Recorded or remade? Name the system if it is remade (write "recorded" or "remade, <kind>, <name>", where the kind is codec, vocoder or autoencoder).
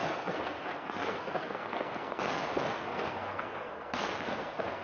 remade, codec, SNAC